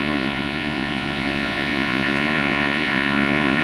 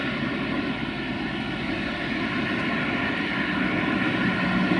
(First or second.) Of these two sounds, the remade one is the first